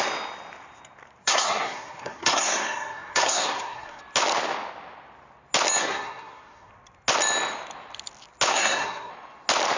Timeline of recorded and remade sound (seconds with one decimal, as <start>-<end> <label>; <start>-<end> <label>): 0.0-1.2 recorded; 1.2-4.0 remade; 4.0-5.8 recorded; 5.8-6.7 remade; 6.7-8.5 recorded; 8.5-9.1 remade; 9.1-9.8 recorded